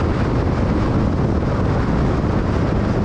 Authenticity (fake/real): real